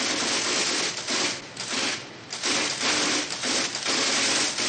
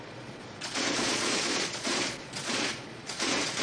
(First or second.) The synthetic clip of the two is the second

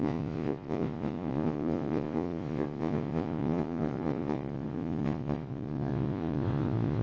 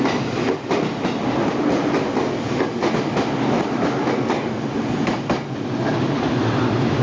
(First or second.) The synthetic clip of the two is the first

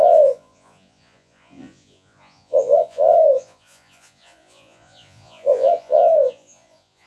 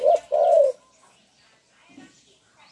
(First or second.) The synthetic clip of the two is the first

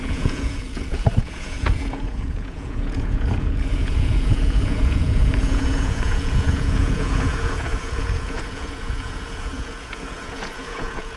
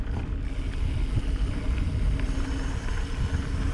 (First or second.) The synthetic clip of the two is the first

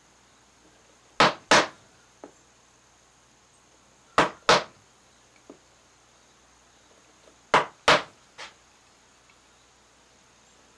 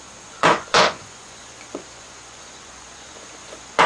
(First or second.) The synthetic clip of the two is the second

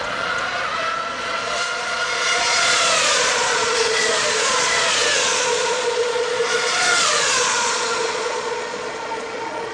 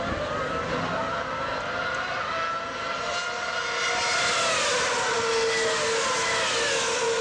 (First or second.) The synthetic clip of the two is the first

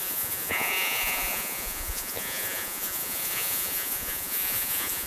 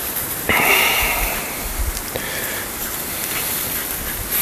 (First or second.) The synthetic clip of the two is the first